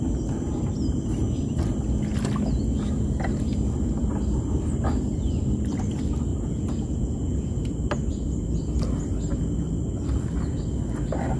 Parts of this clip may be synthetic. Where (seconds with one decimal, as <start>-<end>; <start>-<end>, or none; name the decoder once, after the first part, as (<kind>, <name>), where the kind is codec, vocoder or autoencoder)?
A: 6.3-7.6 (vocoder, Vocos)